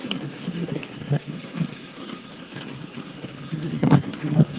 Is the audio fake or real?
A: fake